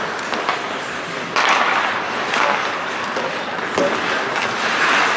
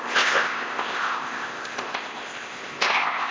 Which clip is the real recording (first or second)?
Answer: first